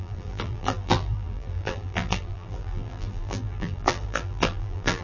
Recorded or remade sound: remade